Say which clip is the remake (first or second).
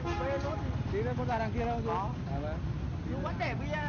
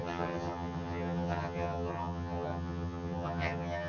second